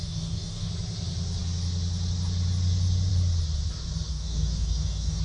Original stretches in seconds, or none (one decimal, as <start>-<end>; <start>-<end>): 0.7-4.1